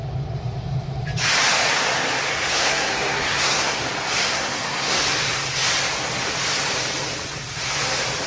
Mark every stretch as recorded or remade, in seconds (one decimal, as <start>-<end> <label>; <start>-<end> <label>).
0.0-2.3 recorded; 2.3-3.8 remade; 3.8-4.2 recorded; 4.2-5.0 remade; 5.0-8.3 recorded